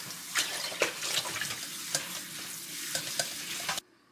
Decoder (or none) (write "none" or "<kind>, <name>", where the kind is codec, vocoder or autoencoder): none